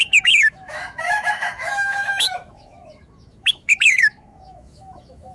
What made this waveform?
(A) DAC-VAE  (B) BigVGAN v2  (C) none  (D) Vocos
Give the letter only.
A